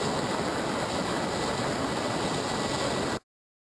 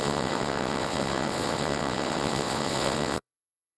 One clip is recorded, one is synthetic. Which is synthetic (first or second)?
second